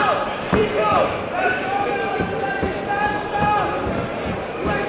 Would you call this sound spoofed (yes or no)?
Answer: yes